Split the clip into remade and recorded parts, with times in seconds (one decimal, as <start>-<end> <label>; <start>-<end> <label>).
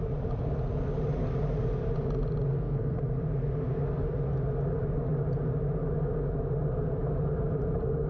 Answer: 0.0-2.5 recorded; 2.5-3.0 remade; 3.0-8.1 recorded